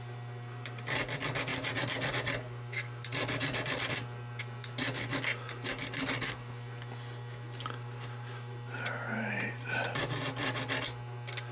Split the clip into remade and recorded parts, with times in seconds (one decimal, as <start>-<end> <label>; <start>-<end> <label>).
0.0-11.5 recorded